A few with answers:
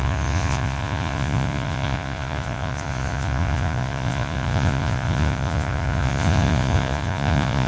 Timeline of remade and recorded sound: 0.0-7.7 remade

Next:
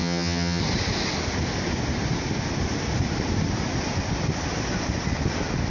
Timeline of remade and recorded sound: 0.0-0.6 remade; 0.6-5.7 recorded

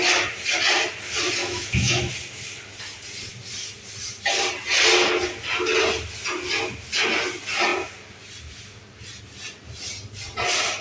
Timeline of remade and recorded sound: 0.0-1.4 recorded; 1.4-2.1 remade; 2.1-10.8 recorded

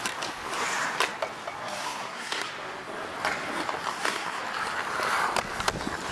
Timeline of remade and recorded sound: 0.0-1.8 recorded; 1.8-2.5 remade; 2.5-3.9 recorded; 3.9-4.4 remade; 4.4-6.1 recorded

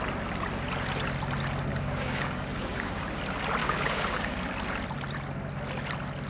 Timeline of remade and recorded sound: 0.0-1.7 recorded; 1.7-3.2 remade; 3.2-3.6 recorded; 3.6-4.5 remade; 4.5-6.3 recorded

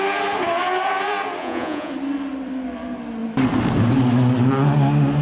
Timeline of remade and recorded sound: 0.0-1.4 recorded; 1.4-1.9 remade; 1.9-5.2 recorded

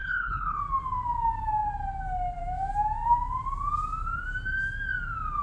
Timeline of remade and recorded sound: 0.0-0.6 remade; 0.6-5.4 recorded